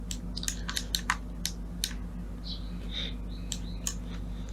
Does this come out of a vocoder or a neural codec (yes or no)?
no